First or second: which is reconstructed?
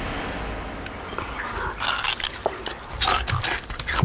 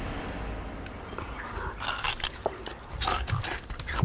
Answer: second